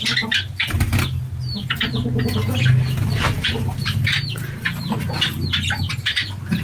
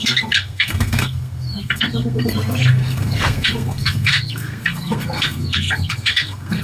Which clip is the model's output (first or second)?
second